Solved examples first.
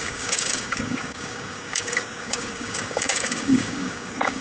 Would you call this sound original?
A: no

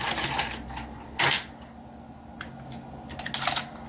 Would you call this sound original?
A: yes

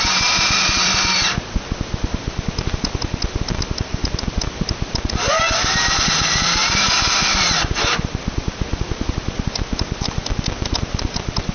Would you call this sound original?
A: no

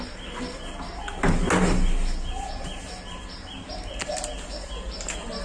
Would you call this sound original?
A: yes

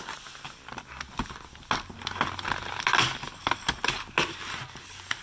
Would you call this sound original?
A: yes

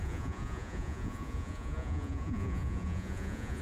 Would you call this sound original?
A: no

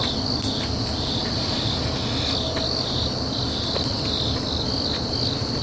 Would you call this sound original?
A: yes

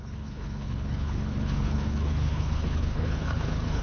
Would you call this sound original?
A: no